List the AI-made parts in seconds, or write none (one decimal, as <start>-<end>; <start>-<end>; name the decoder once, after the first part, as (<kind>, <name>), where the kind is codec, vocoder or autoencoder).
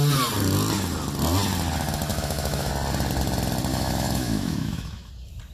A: 2.1-2.7 (autoencoder, DAC-VAE); 3.7-5.1